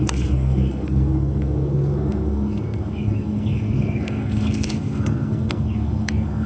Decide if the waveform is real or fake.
fake